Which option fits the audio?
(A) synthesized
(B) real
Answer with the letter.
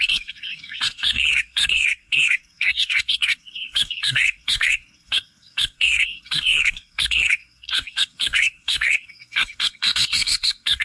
A